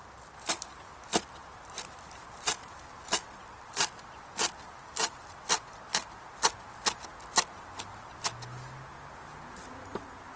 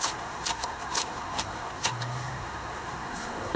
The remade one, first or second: second